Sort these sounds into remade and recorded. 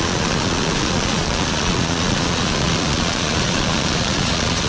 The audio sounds remade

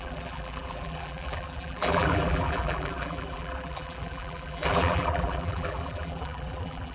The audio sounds remade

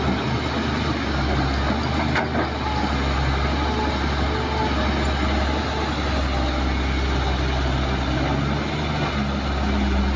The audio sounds recorded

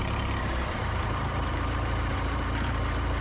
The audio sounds remade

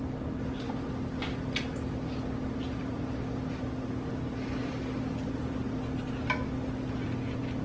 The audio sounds recorded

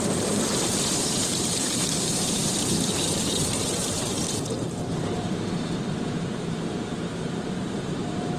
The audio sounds remade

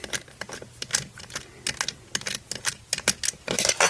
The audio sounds recorded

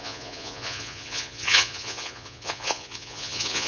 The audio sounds remade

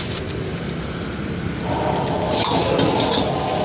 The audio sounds recorded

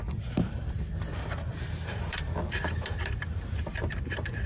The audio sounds remade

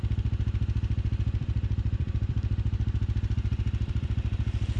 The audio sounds remade